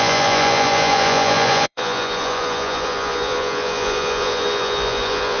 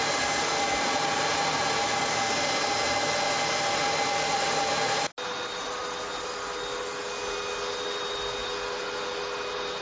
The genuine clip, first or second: second